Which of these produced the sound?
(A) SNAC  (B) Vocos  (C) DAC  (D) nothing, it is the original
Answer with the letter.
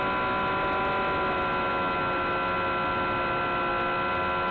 D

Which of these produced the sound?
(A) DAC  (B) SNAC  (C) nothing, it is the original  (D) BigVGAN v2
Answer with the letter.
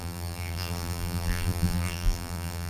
D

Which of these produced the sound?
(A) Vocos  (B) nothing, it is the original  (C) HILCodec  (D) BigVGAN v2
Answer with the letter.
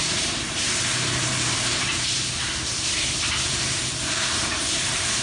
D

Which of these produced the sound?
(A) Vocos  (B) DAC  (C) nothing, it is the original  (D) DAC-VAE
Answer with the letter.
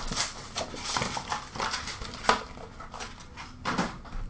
C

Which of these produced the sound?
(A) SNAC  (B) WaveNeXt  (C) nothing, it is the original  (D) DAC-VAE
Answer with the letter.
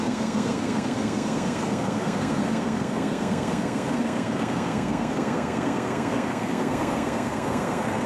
A